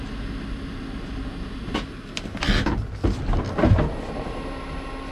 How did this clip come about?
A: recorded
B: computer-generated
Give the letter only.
A